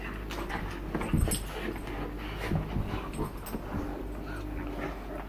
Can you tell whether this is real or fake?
real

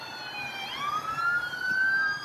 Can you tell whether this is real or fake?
real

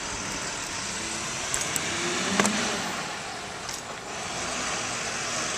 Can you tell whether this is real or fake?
real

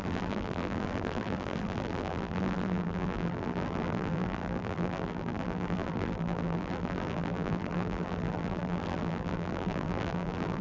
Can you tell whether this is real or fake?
fake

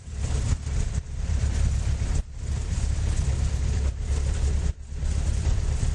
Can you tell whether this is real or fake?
fake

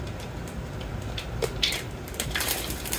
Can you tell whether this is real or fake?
fake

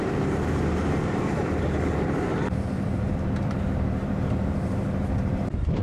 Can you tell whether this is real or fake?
fake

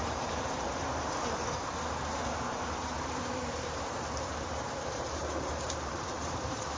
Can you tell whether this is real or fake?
fake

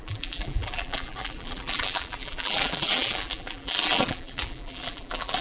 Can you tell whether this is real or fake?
fake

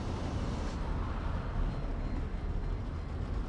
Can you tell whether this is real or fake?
fake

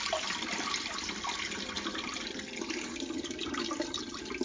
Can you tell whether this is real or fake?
real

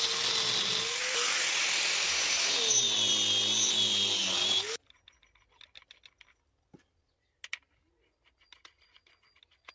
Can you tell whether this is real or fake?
real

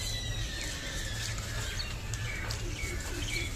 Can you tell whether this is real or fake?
real